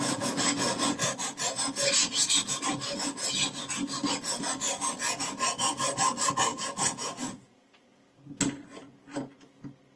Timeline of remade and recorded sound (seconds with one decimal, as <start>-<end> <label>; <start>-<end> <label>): 0.0-6.5 recorded; 6.5-7.6 remade; 7.6-10.0 recorded